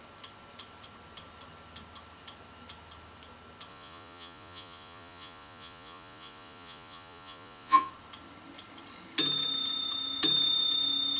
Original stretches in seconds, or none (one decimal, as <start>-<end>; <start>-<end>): 0.0-3.7; 7.9-11.2